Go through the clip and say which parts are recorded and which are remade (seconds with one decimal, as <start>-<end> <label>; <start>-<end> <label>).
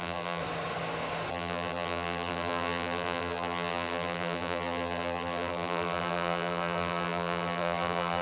0.0-0.4 remade; 0.4-1.3 recorded; 1.3-8.2 remade